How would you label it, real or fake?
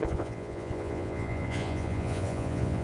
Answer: fake